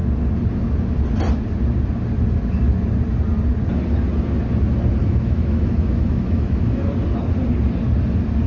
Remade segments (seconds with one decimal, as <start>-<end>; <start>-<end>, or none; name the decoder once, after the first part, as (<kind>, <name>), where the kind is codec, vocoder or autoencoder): 5.0-6.9 (autoencoder, DAC-VAE)